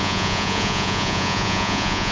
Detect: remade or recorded remade